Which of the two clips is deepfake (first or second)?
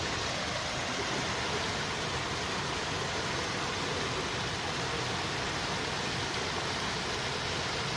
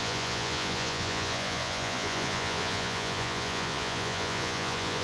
second